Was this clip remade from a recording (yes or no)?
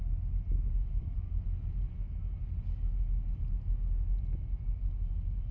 no